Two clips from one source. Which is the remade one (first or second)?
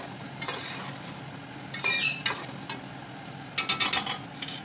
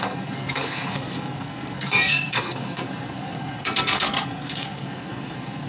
second